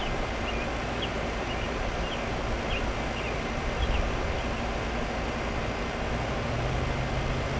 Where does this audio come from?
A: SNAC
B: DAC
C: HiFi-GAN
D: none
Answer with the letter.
D